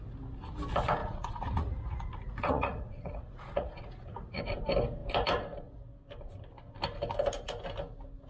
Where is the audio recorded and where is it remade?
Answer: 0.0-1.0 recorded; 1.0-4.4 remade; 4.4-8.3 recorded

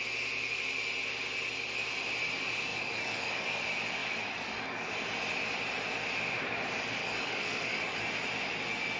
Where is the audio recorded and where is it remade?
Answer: 0.0-2.7 recorded; 2.7-3.6 remade; 3.6-4.0 recorded; 4.0-4.9 remade; 4.9-7.0 recorded; 7.0-8.1 remade; 8.1-9.0 recorded

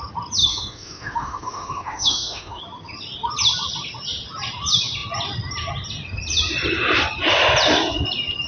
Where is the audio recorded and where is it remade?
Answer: 0.0-0.4 recorded; 0.4-2.6 remade; 2.6-8.5 recorded

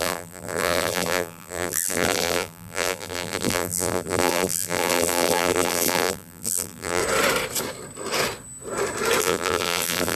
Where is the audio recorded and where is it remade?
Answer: 0.0-7.0 remade; 7.0-9.2 recorded; 9.2-10.2 remade

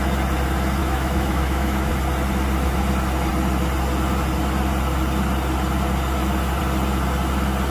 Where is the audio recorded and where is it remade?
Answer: 0.0-0.8 recorded; 0.8-1.9 remade; 1.9-7.7 recorded